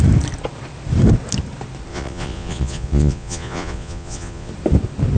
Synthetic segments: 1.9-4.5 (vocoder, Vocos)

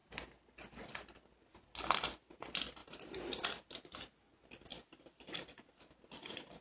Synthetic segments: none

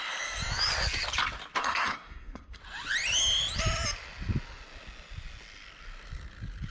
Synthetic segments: 1.6-2.6 (codec, SNAC)

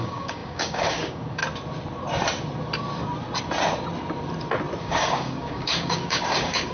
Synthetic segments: 0.0-1.4 (codec, DAC); 4.8-6.7

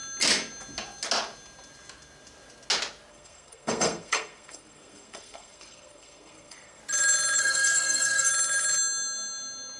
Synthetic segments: 3.1-6.8 (codec, SNAC); 7.4-8.3